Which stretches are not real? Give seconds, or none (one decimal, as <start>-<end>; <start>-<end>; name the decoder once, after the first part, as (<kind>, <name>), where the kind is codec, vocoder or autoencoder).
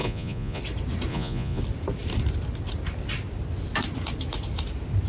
0.0-0.6 (vocoder, Vocos); 1.1-1.6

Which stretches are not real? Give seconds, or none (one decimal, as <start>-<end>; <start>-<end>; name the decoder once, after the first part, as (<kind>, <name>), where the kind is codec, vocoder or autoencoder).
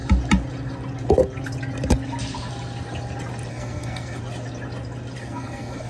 3.5-4.2 (codec, SNAC); 5.2-5.9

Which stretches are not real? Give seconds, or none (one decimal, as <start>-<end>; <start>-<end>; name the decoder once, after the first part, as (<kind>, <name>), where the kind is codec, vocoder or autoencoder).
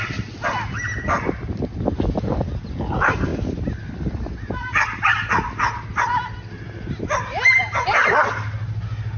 none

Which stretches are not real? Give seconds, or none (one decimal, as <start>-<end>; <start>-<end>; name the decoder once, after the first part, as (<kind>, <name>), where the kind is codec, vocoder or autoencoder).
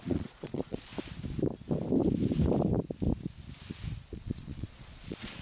0.0-0.9 (vocoder, Vocos); 4.1-5.4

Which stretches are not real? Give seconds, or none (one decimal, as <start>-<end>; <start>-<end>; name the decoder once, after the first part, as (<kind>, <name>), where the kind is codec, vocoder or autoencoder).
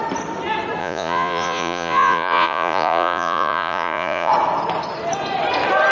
0.8-4.3 (vocoder, Vocos)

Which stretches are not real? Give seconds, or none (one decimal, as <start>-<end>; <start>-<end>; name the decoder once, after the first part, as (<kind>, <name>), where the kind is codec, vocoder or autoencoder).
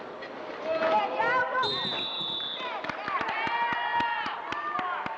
none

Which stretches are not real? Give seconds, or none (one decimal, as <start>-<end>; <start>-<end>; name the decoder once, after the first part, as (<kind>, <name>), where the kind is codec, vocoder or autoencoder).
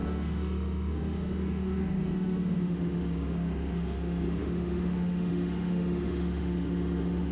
0.0-7.3 (autoencoder, DAC-VAE)